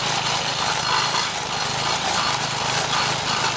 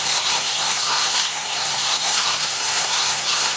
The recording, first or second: first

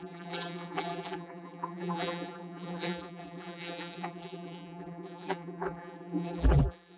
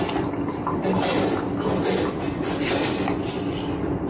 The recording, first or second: second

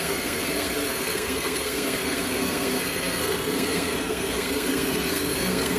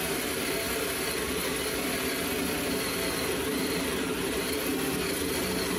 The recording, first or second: second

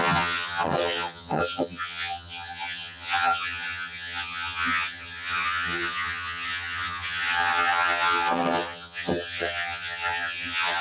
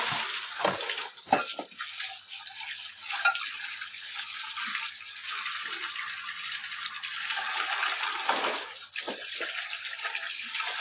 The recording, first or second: second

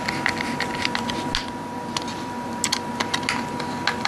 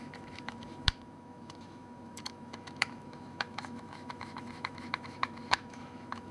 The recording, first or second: first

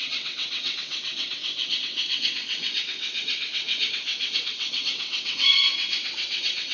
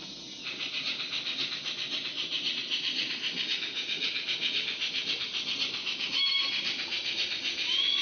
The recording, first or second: second